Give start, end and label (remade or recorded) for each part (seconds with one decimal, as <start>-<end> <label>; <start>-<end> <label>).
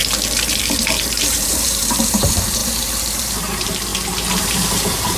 0.0-0.6 recorded; 0.6-3.9 remade; 3.9-4.4 recorded; 4.4-5.2 remade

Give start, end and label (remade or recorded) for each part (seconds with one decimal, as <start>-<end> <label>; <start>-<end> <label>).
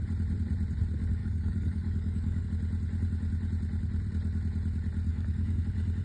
0.0-1.2 recorded; 1.2-2.4 remade; 2.4-5.1 recorded; 5.1-5.6 remade; 5.6-6.0 recorded